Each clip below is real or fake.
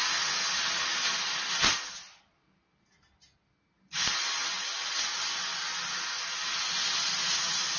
real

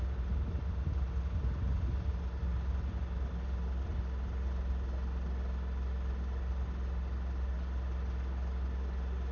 real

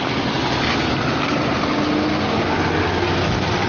real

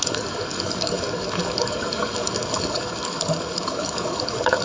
fake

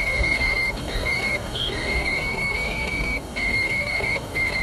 fake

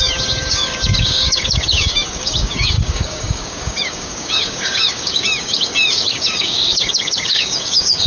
fake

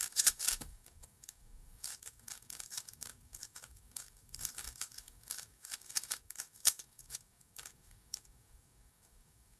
fake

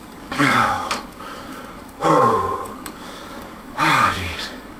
fake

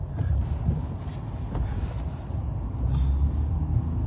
real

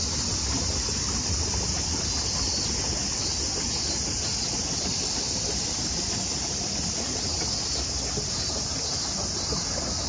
real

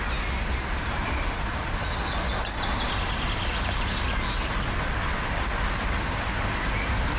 real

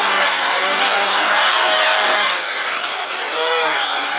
fake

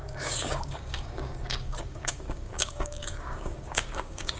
fake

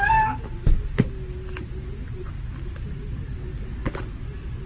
real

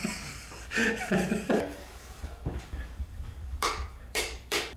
fake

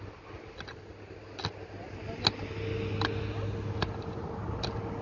real